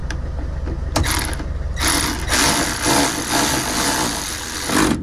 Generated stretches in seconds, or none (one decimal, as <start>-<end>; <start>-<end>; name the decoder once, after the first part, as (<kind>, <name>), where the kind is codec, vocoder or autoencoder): none